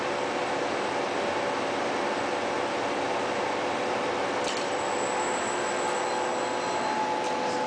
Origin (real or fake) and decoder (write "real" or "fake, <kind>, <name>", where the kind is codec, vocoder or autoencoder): real